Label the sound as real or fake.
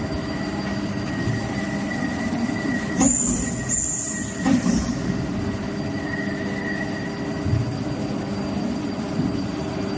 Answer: real